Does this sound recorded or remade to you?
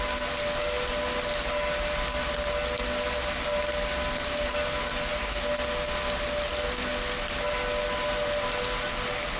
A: recorded